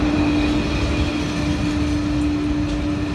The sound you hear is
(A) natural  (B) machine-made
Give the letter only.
A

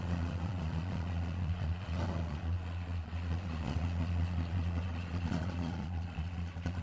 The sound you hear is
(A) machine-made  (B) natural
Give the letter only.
A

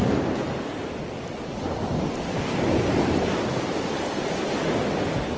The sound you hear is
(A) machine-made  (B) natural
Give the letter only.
B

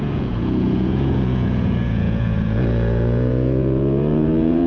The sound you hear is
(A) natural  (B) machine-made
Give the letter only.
B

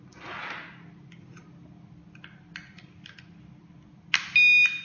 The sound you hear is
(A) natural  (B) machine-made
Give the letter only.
A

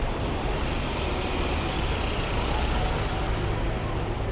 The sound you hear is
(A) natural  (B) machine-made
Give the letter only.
A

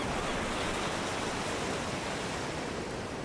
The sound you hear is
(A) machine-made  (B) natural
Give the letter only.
B